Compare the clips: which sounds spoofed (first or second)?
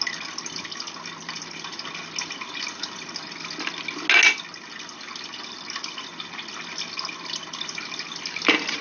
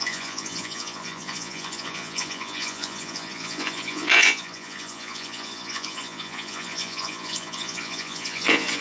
second